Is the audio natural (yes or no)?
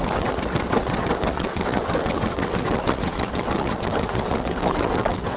no